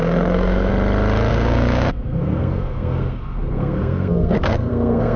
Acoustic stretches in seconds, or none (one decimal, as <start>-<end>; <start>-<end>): 0.7-1.3